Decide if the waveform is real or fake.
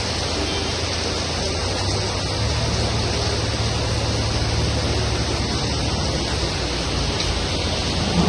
real